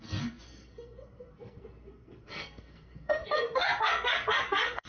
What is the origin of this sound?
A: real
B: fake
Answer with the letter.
B